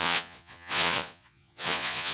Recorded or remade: remade